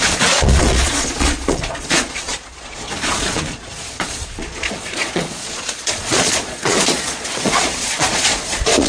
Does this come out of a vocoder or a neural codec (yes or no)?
yes